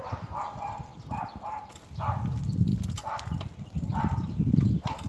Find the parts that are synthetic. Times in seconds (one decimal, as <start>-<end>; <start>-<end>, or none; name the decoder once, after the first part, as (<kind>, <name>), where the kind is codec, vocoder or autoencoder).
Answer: 0.0-0.9 (vocoder, BigVGAN v2); 1.7-2.7; 3.8-5.1